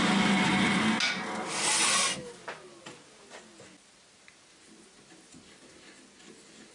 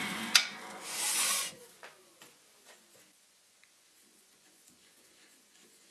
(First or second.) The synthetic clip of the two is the second